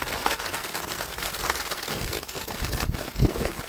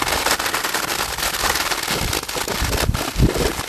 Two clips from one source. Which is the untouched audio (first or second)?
second